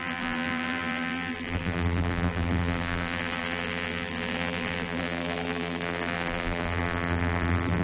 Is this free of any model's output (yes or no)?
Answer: no